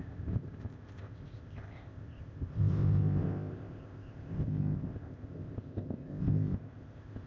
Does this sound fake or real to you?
fake